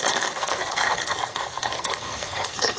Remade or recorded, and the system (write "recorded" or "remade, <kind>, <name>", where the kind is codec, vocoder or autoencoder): remade, codec, SNAC